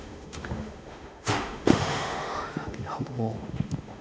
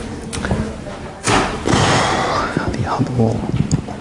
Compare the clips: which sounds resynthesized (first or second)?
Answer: first